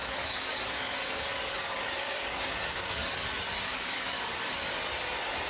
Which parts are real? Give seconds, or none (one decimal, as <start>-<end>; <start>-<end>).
3.3-3.7; 4.5-5.5